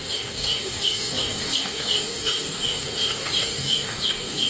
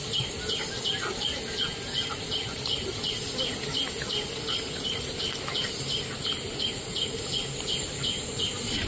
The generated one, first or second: first